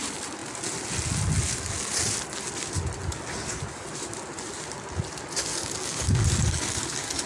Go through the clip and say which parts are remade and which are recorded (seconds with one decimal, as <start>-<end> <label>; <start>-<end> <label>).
0.0-5.5 recorded; 5.5-7.3 remade